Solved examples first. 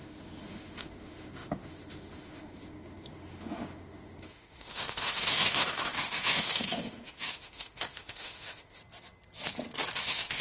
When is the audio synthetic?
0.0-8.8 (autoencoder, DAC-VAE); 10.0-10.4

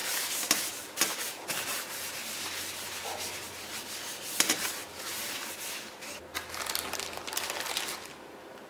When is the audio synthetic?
none

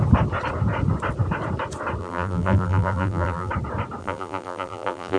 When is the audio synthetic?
2.0-3.5 (vocoder, BigVGAN v2); 4.0-5.2

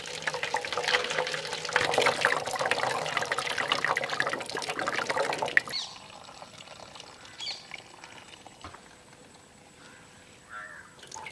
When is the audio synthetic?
none

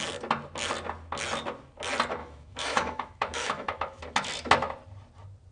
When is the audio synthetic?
2.2-4.0 (autoencoder, DAC-VAE)